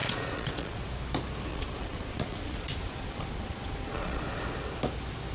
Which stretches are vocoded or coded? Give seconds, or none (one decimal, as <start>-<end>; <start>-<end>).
0.0-0.8; 1.5-4.2